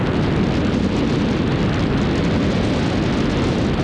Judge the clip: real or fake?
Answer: real